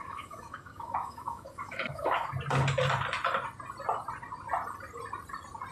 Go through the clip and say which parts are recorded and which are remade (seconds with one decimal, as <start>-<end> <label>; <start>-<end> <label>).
0.0-2.3 remade; 2.3-5.7 recorded